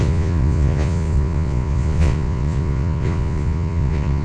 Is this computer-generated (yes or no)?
yes